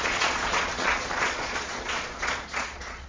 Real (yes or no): no